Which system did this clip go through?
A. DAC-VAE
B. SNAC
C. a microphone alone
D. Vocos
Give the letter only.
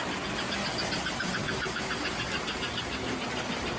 C